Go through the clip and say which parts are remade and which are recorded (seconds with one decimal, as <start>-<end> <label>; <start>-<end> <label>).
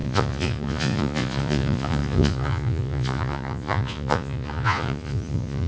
0.0-5.7 remade